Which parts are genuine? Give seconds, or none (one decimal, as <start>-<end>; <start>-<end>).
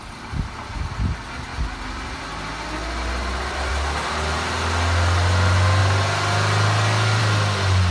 0.0-7.9